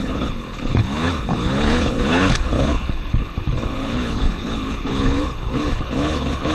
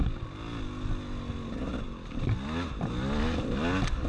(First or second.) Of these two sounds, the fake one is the first